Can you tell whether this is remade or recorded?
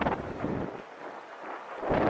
recorded